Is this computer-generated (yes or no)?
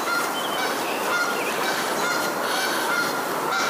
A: no